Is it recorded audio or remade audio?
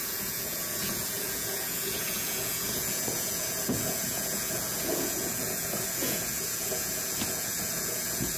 remade